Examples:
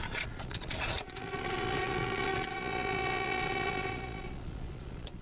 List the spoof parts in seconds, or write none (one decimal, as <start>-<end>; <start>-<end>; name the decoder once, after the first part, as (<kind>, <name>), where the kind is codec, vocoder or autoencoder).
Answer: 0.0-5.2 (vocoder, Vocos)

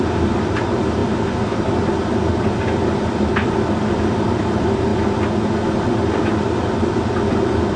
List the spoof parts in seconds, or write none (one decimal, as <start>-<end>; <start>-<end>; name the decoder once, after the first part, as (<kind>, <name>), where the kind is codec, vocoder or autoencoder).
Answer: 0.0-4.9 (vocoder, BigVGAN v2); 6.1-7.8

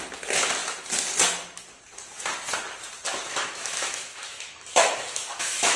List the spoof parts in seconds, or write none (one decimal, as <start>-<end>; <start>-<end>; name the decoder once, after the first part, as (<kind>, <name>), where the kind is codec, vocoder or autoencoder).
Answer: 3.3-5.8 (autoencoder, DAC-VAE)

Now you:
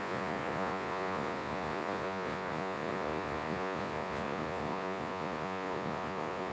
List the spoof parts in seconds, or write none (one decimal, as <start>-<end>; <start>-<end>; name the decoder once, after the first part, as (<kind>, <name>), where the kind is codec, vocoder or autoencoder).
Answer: 0.0-6.5 (vocoder, Vocos)

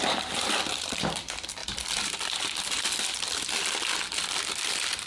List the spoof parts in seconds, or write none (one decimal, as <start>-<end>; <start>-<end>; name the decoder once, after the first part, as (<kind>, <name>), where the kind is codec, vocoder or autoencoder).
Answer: 0.0-1.6 (vocoder, BigVGAN v2); 2.7-5.1

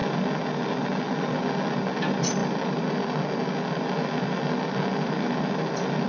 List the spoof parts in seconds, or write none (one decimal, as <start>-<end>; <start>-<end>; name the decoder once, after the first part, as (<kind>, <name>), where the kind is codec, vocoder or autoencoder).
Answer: none

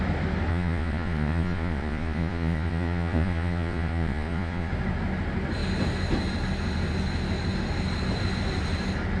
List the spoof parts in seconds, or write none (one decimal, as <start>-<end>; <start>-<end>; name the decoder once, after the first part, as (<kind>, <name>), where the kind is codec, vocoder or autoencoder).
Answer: 0.5-4.7 (vocoder, Vocos)